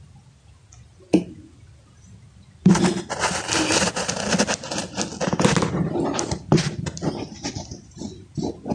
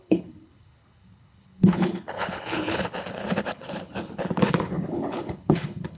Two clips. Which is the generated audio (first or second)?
second